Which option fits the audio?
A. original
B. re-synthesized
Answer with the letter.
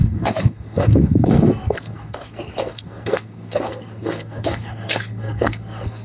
B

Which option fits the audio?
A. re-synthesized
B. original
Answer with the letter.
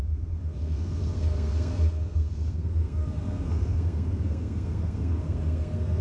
A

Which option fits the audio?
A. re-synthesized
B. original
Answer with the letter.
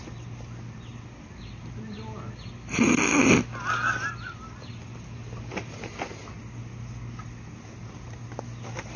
B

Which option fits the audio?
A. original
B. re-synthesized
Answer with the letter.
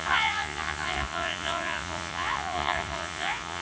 B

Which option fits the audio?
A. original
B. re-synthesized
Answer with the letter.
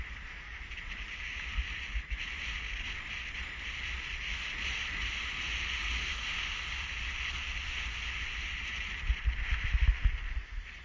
A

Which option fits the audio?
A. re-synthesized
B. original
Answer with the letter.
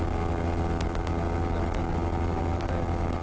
B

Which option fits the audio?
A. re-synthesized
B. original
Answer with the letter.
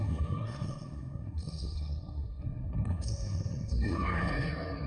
A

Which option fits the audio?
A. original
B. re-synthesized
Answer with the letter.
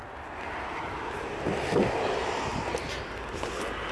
A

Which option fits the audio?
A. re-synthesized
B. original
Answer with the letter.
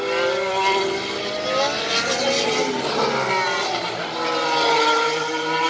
B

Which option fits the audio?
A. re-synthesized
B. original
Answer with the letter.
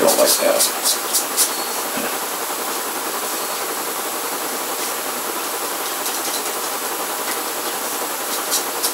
B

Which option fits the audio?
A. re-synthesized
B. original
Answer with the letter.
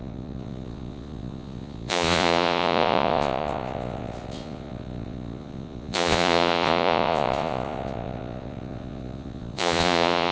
A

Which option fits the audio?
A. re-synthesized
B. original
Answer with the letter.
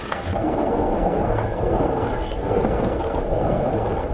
A